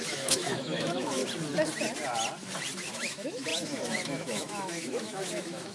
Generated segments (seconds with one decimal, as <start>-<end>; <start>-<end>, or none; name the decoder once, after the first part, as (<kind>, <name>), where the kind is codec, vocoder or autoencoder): 0.0-1.2 (autoencoder, DAC-VAE); 2.9-5.7